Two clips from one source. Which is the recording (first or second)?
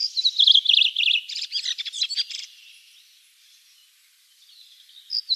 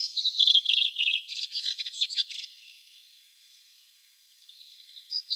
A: first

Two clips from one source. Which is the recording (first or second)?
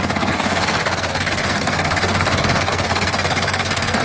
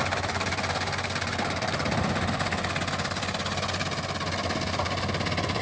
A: second